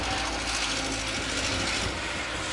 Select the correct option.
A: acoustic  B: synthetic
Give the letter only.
A